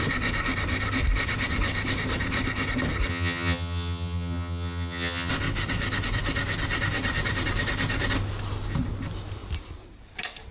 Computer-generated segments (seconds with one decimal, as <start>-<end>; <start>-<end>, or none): 3.1-5.3